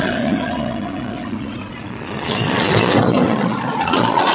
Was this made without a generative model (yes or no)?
no